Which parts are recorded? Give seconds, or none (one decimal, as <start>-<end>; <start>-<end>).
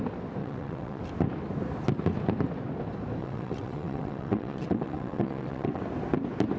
0.0-0.4; 1.0-3.2; 5.8-6.6